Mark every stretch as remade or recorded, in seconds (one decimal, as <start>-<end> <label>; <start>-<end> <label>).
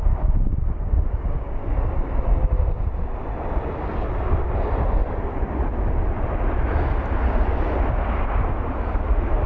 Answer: 0.0-9.5 recorded